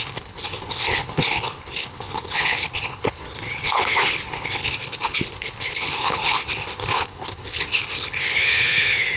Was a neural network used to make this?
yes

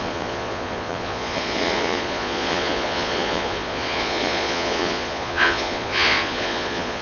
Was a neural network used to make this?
yes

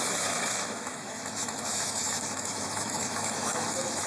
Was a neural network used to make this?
yes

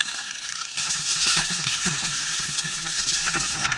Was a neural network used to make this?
yes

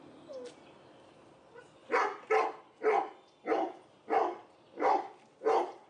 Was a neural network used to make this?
no